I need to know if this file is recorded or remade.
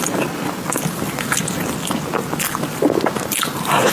recorded